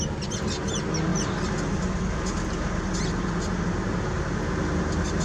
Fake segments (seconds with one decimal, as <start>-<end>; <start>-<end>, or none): none